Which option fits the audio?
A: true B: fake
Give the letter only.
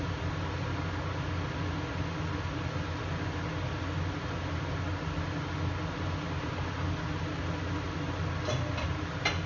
A